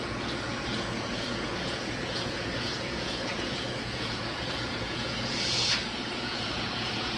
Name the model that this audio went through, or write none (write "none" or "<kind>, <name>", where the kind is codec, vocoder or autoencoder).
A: vocoder, Vocos